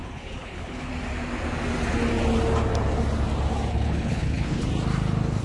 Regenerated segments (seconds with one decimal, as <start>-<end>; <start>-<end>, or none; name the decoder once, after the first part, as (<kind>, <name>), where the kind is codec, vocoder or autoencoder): 0.0-0.9 (codec, HILCodec); 3.7-4.7